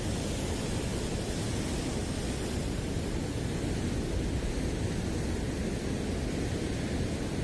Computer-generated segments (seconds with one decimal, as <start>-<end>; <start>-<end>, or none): none